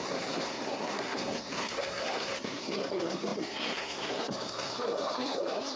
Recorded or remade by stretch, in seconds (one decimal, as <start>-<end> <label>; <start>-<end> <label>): 0.0-5.8 remade